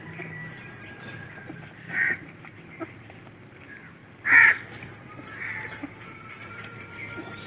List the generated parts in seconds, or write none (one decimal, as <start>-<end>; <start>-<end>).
0.0-0.4; 1.3-4.0; 4.5-7.5

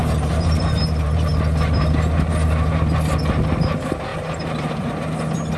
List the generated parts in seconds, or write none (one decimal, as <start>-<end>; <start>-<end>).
0.0-1.3; 4.1-4.9

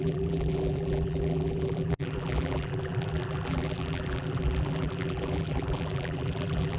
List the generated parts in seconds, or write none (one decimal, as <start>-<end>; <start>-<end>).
0.0-6.8

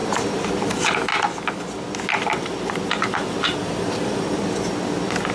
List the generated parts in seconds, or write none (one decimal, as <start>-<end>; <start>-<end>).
3.6-4.4